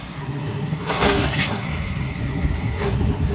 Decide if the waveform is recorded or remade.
remade